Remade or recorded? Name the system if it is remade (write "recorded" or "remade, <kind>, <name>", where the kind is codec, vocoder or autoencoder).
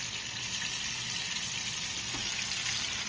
recorded